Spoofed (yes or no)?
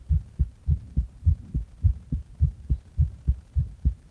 no